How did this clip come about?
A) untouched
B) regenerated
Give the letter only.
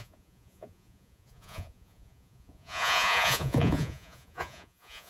B